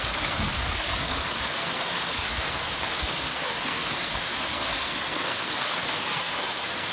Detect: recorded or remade remade